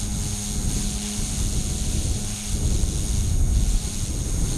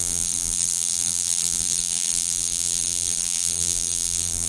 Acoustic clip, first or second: first